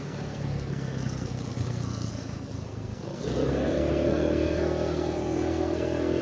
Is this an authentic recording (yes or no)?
no